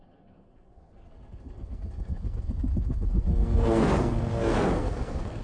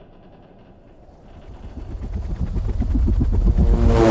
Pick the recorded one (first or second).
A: second